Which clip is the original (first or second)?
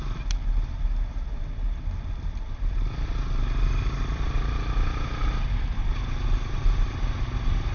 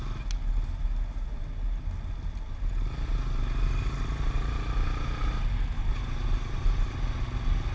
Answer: second